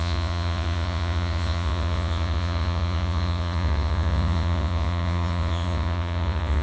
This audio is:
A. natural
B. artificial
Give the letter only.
B